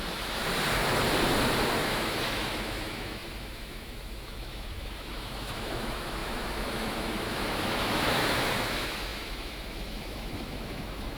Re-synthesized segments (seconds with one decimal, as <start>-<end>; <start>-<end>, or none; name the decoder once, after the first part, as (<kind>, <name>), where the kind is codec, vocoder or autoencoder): 0.0-0.4 (autoencoder, DAC-VAE); 1.8-11.2